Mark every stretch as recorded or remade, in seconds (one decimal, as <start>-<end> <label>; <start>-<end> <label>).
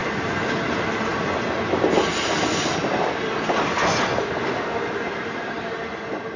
0.0-6.4 recorded